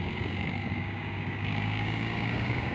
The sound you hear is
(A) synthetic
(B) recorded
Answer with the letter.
A